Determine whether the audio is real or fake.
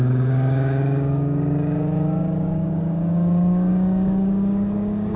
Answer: fake